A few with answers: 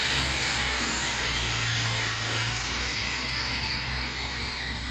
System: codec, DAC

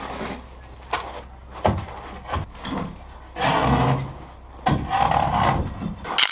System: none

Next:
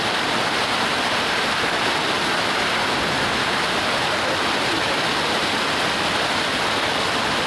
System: none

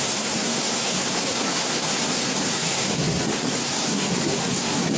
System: codec, SNAC